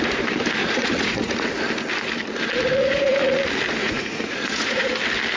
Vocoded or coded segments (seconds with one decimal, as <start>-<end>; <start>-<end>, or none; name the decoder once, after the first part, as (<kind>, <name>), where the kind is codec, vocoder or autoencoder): 0.6-1.3 (vocoder, Vocos); 2.8-3.4; 3.8-4.9